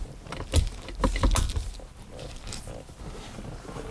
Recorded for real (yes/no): yes